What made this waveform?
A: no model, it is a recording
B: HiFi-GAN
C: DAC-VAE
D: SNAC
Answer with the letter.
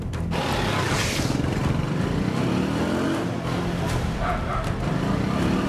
A